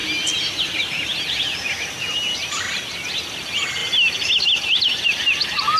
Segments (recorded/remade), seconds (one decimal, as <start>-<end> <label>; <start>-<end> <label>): 0.0-5.8 recorded